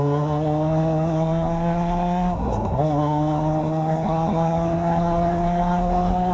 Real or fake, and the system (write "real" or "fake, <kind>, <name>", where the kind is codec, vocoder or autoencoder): fake, codec, SNAC